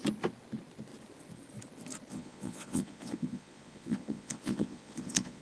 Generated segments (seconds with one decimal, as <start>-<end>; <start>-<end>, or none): 2.1-5.4